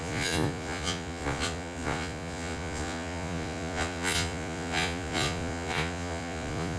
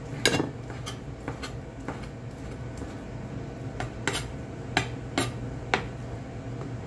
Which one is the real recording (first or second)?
second